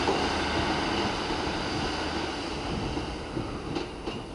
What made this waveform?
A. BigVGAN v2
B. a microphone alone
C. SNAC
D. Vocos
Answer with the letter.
B